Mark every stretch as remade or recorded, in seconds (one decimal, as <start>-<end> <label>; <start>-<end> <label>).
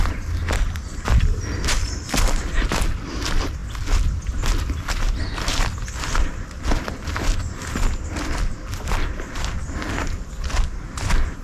0.0-11.4 recorded